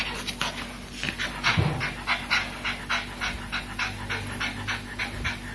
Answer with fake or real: real